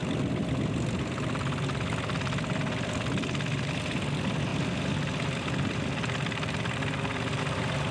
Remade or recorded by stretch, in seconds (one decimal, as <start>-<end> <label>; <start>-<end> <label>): 0.0-3.9 remade; 3.9-4.5 recorded; 4.5-7.4 remade; 7.4-7.9 recorded